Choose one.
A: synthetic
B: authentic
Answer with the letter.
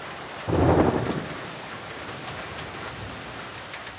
B